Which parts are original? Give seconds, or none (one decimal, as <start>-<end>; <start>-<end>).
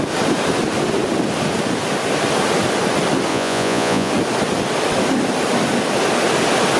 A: 0.0-3.3; 4.1-6.8